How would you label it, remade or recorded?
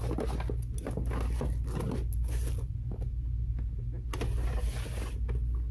recorded